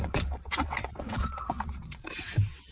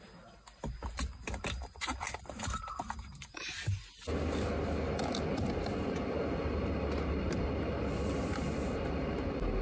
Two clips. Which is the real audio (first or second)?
second